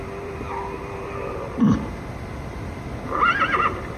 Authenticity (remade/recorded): remade